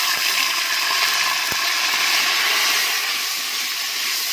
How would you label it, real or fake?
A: real